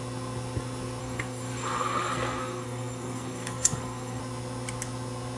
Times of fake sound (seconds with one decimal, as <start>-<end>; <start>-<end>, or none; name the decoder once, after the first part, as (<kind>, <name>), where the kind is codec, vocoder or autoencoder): 1.0-4.2 (codec, SNAC)